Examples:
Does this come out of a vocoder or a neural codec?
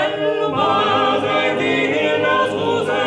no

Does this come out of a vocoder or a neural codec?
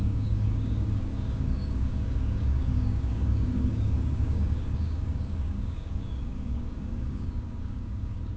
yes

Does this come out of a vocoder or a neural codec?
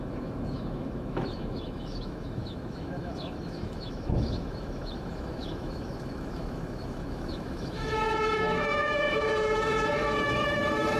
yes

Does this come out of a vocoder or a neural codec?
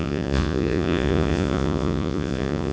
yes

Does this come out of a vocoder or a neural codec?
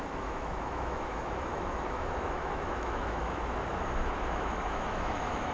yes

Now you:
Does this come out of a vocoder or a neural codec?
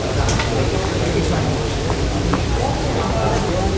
no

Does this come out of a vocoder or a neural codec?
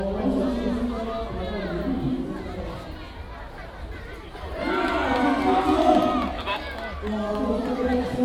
no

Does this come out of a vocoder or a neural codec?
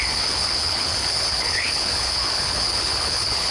yes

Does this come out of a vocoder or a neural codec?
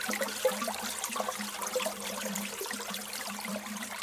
no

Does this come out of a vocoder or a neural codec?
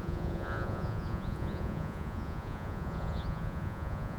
yes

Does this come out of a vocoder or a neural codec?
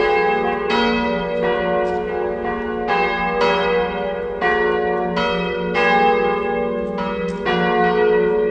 no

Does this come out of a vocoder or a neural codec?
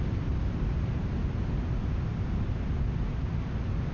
no